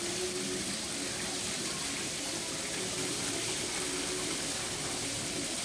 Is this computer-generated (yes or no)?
yes